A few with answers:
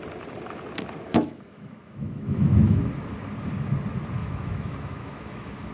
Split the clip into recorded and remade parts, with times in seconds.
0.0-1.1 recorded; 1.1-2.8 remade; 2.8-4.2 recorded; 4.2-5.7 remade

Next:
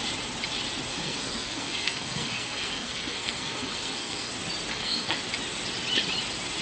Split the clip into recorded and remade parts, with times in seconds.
0.0-0.9 recorded; 0.9-4.3 remade; 4.3-4.7 recorded; 4.7-5.2 remade; 5.2-6.6 recorded

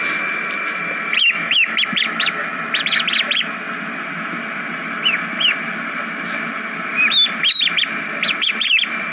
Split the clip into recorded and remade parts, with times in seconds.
0.0-9.1 recorded

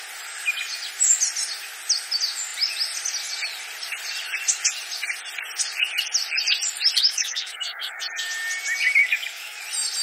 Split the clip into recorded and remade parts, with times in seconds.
0.0-7.0 recorded; 7.0-8.0 remade; 8.0-9.0 recorded; 9.0-9.6 remade; 9.6-10.0 recorded

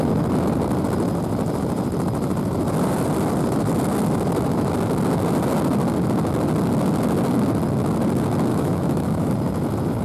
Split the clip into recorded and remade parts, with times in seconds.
0.0-8.5 recorded; 8.5-9.3 remade; 9.3-10.0 recorded